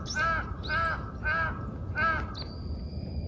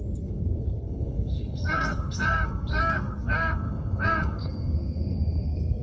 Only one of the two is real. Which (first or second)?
first